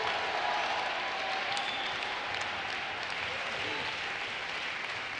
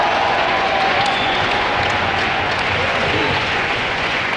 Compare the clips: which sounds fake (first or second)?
second